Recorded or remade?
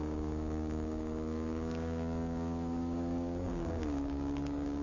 remade